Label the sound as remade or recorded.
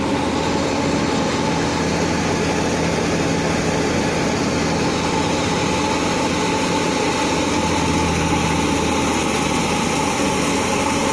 recorded